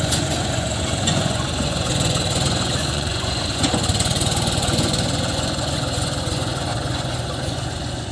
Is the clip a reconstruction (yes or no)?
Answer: yes